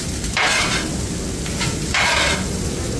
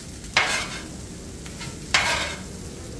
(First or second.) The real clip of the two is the second